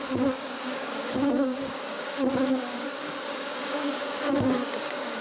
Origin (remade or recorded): remade